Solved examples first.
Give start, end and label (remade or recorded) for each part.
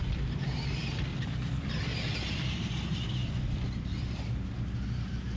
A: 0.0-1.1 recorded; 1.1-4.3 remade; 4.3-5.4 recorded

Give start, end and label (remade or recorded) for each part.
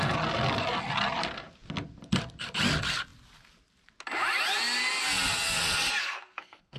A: 0.0-6.0 recorded; 6.0-6.8 remade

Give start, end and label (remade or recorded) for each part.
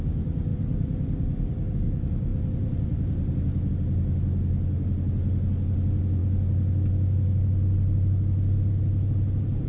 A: 0.0-9.7 recorded